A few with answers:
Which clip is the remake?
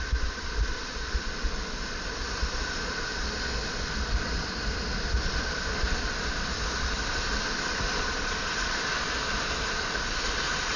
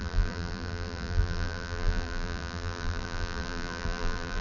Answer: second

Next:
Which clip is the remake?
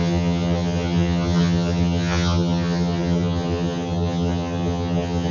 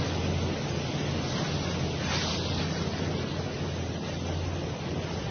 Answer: first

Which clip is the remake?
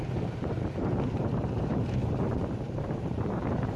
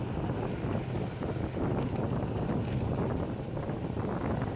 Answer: first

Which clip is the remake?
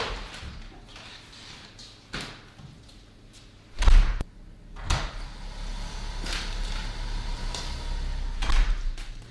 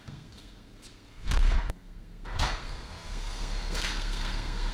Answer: second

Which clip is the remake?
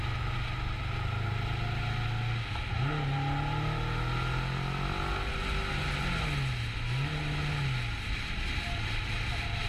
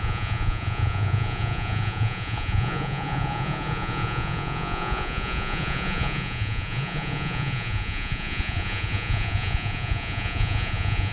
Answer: second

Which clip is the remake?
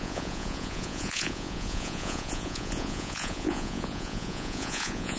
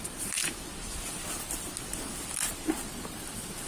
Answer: first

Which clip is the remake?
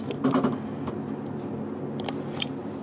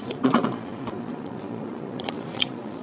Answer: second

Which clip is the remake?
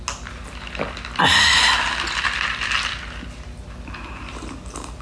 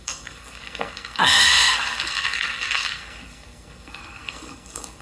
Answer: second